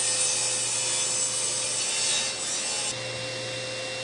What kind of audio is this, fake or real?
real